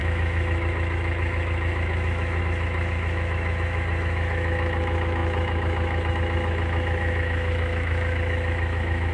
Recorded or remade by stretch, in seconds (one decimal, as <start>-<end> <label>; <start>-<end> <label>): 0.0-9.1 remade